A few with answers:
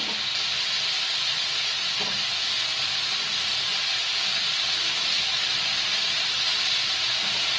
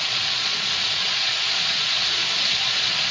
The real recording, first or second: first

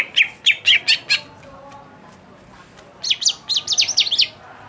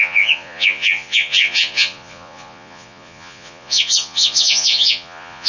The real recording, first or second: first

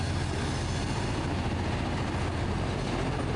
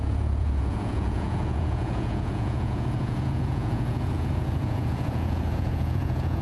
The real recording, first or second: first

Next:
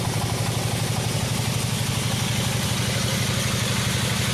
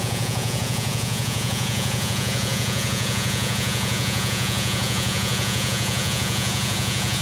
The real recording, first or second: first